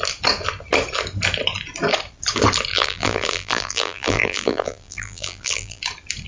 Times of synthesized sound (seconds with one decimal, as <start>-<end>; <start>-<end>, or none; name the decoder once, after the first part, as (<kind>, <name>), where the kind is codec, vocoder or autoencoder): 2.7-5.8 (vocoder, BigVGAN v2)